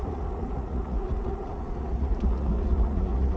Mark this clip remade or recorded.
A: remade